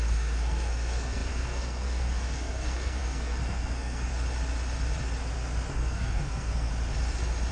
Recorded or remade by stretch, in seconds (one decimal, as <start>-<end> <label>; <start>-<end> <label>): 0.0-4.1 remade; 4.1-5.7 recorded; 5.7-6.7 remade; 6.7-7.5 recorded